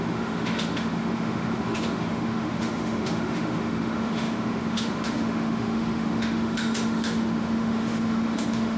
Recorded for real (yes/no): no